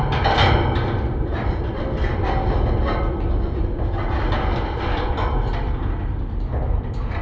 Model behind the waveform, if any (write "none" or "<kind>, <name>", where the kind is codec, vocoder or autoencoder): none